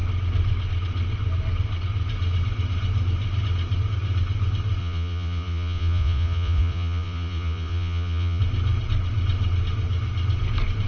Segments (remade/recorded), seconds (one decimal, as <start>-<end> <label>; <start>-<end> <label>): 0.0-4.8 recorded; 4.8-8.4 remade; 8.4-10.9 recorded